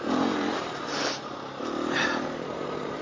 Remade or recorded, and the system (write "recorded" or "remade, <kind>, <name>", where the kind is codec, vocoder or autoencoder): remade, vocoder, BigVGAN v2